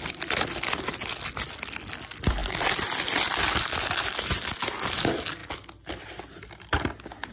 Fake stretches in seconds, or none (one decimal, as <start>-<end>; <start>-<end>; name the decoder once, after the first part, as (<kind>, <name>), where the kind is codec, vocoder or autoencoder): none